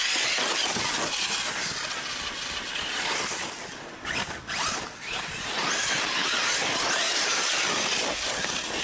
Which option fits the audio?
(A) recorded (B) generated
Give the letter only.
A